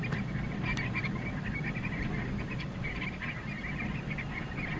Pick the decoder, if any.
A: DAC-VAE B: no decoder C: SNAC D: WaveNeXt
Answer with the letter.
B